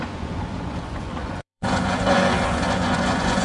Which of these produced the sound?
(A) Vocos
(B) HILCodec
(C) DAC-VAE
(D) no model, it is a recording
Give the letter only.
A